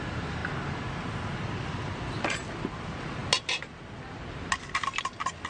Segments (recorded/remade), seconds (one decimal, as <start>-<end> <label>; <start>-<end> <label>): 0.0-5.5 recorded